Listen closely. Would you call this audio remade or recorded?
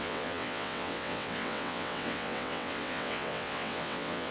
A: remade